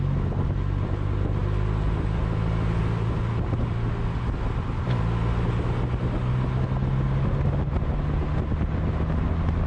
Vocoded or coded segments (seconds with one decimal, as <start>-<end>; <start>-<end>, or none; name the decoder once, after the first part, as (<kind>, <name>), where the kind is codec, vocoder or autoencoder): none